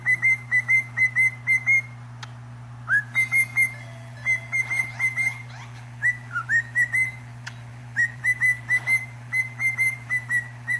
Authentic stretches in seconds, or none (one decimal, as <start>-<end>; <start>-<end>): 1.0-3.0